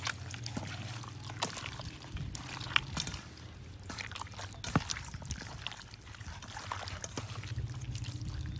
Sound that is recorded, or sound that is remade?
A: recorded